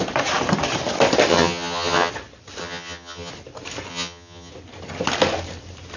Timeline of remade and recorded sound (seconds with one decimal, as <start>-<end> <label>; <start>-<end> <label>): 0.0-1.3 recorded; 1.3-2.1 remade; 2.1-2.6 recorded; 2.6-3.3 remade; 3.3-3.9 recorded; 3.9-4.5 remade; 4.5-6.0 recorded